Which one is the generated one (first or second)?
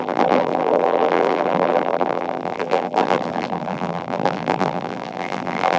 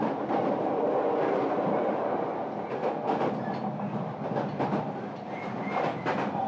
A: first